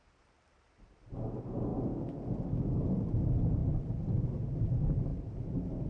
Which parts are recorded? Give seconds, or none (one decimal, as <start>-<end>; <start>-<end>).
0.0-5.9